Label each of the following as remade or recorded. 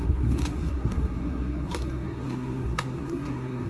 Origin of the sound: remade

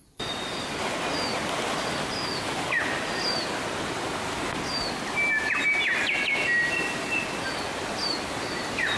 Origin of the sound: recorded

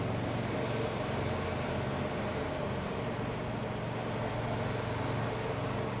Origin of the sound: recorded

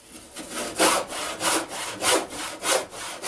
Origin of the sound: recorded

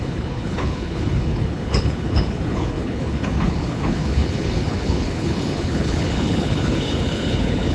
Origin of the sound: remade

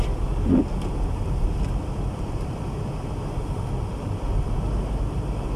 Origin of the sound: recorded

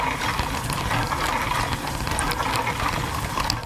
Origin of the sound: recorded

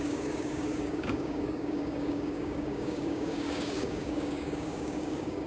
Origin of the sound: remade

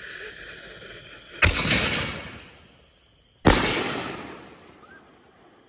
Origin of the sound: recorded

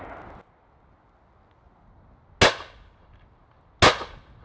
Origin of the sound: recorded